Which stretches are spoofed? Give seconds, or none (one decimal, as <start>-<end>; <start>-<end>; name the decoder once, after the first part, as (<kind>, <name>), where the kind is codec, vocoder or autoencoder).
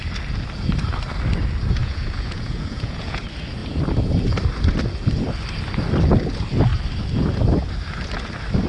1.8-3.2 (vocoder, Vocos)